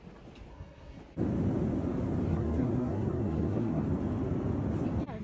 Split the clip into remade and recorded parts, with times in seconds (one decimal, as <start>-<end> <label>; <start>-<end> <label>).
0.0-0.5 recorded; 0.5-1.0 remade; 1.0-2.3 recorded; 2.3-3.8 remade; 3.8-5.2 recorded